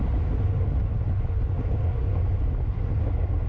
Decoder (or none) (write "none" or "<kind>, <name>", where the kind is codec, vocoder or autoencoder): none